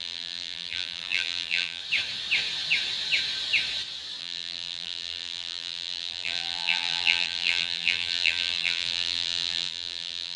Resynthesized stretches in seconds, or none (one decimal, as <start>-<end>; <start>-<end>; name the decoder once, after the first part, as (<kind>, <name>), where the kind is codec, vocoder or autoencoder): 0.0-1.8 (vocoder, BigVGAN v2); 4.2-10.4